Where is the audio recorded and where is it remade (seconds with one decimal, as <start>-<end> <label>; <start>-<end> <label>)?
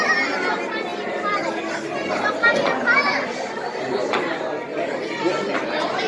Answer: 0.0-6.1 recorded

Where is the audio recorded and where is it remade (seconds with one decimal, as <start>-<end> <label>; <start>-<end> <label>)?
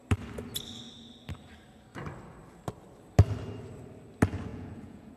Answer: 0.0-4.5 recorded; 4.5-5.2 remade